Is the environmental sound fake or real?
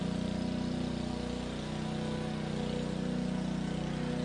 real